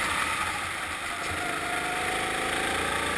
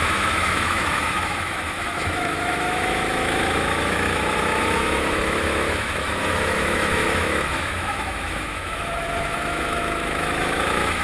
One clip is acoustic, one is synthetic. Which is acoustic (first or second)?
first